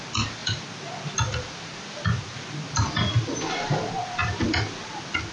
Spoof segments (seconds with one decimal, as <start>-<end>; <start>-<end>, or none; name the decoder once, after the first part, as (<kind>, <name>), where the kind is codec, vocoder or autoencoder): none